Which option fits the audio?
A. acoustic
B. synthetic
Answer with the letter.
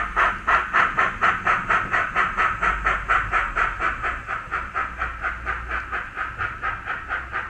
A